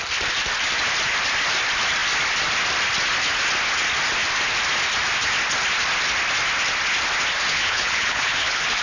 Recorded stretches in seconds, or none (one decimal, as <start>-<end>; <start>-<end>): 0.0-7.5

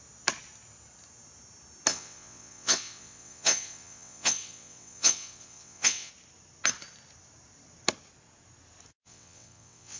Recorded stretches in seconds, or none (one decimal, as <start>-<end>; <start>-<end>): 0.0-1.9; 6.1-9.0